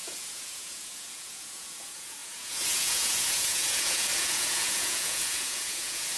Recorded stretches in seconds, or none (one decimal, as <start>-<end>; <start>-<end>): none